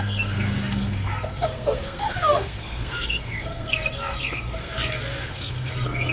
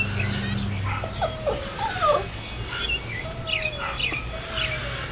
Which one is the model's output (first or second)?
first